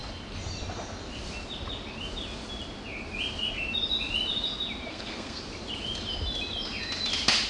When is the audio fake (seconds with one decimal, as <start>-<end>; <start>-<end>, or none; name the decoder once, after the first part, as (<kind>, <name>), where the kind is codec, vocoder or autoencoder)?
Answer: 4.9-5.5 (codec, SNAC)